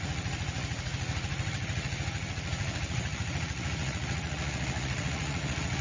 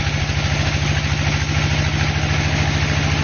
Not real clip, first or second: first